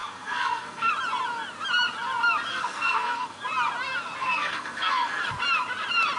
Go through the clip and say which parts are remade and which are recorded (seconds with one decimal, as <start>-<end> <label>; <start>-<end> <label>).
0.0-0.9 remade; 0.9-2.5 recorded; 2.5-3.4 remade; 3.4-4.2 recorded; 4.2-5.2 remade; 5.2-6.2 recorded